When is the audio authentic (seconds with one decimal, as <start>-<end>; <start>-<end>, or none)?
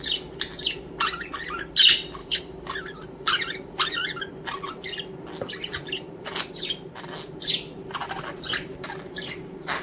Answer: 0.0-2.2; 4.2-9.8